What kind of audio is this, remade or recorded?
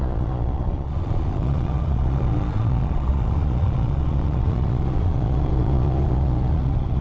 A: remade